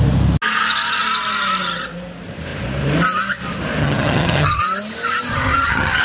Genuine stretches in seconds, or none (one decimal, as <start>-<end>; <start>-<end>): 0.0-3.8; 4.6-5.3